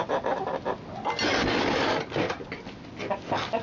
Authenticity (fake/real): real